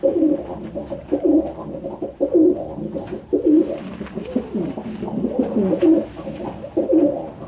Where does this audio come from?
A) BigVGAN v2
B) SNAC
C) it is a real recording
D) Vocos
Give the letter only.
C